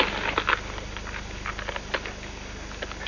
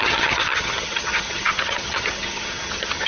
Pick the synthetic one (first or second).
second